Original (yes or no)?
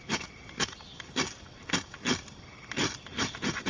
yes